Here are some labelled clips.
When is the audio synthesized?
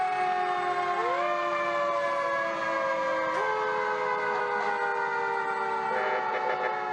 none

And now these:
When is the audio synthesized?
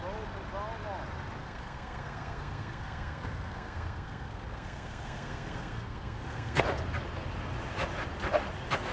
1.4-6.6 (codec, SNAC)